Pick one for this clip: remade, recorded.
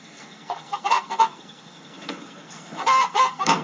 remade